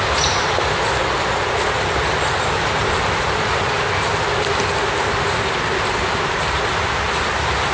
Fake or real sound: real